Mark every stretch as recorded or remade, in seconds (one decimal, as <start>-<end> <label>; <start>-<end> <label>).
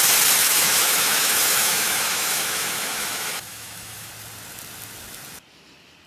0.0-0.4 recorded; 0.4-4.1 remade; 4.1-6.1 recorded